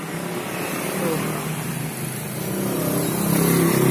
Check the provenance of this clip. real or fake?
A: real